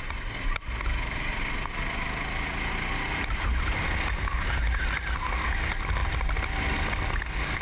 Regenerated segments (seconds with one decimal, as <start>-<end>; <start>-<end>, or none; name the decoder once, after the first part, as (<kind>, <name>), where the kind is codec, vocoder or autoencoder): none